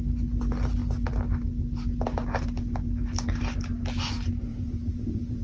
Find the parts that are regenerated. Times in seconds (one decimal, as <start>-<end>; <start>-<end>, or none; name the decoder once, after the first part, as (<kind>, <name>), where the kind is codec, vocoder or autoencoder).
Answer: 4.5-5.4 (vocoder, Vocos)

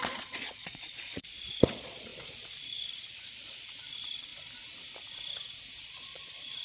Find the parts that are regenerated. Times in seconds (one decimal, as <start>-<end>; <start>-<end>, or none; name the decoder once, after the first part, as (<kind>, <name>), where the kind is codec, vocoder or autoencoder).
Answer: 0.0-4.3 (vocoder, Vocos); 5.8-6.6

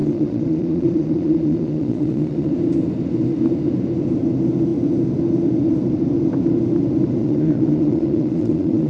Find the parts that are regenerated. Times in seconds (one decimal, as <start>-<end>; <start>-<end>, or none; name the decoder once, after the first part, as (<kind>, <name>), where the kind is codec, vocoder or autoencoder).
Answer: 0.0-2.5 (vocoder, Vocos); 7.2-8.9

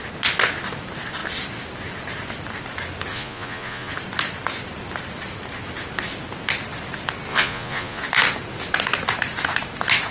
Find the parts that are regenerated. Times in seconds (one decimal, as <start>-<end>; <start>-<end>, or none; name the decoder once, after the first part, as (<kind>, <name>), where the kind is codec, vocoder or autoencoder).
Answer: 3.1-3.9 (vocoder, Vocos); 7.3-8.0

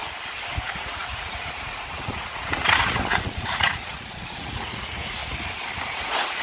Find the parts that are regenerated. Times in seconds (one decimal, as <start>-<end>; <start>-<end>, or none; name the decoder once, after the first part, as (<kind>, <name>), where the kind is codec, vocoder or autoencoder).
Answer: 0.6-5.2 (vocoder, Vocos); 5.9-6.4